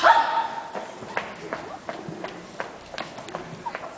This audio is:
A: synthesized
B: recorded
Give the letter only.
B